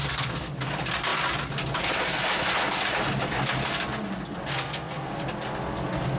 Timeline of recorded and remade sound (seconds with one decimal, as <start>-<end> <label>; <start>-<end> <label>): 0.0-0.5 remade; 0.5-4.5 recorded; 4.5-5.1 remade; 5.1-6.2 recorded